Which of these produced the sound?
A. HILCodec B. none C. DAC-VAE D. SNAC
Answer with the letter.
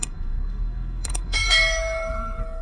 D